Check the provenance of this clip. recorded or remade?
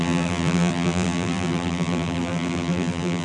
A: remade